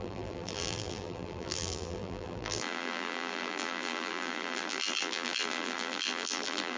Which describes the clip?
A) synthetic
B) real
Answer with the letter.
A